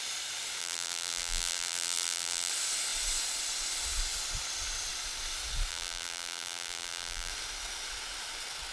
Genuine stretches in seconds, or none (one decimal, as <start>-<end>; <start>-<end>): 0.0-0.6; 2.5-5.7; 7.3-8.7